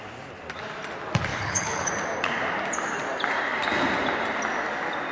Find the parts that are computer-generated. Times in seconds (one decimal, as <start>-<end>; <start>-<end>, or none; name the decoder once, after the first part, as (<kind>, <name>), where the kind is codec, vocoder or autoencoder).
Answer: 1.3-1.9 (codec, HILCodec)